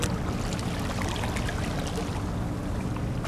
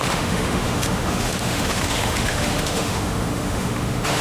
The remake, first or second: second